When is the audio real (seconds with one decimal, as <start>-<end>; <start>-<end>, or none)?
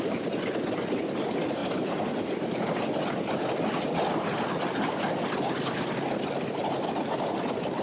0.0-7.8